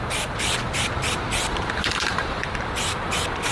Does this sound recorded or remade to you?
remade